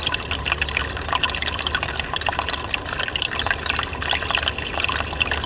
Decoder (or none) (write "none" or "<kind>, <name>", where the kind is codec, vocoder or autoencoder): none